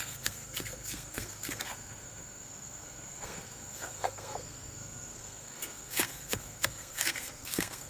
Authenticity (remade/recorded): remade